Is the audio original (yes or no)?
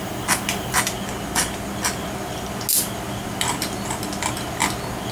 yes